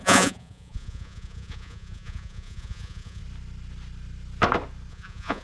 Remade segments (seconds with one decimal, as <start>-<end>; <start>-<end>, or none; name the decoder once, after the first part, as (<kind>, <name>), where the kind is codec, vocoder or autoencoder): 0.0-3.2 (vocoder, Vocos); 4.9-5.4